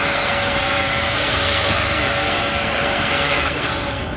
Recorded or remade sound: remade